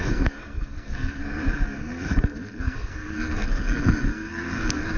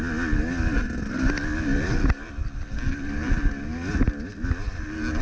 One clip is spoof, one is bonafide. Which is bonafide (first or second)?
second